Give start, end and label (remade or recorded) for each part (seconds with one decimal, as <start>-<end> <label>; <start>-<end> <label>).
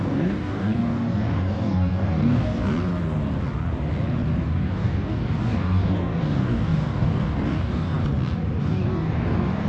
0.0-2.6 remade; 2.6-4.4 recorded; 4.4-8.0 remade; 8.0-8.6 recorded; 8.6-9.7 remade